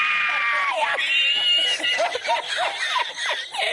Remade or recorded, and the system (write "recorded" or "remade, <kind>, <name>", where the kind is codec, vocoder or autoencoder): recorded